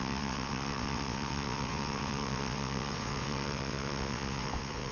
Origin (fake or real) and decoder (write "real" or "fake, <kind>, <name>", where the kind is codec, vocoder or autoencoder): fake, vocoder, WaveNeXt